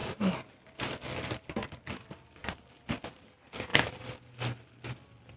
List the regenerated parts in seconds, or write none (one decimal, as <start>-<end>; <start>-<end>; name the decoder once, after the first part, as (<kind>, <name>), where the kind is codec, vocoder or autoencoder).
none